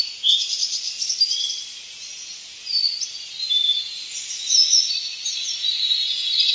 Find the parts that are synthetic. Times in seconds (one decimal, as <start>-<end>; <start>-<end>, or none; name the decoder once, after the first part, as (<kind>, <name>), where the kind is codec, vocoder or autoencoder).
4.8-5.5 (vocoder, BigVGAN v2)